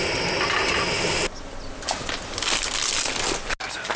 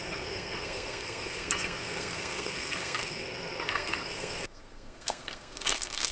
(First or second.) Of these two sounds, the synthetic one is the second